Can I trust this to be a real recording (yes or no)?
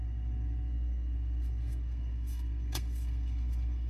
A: no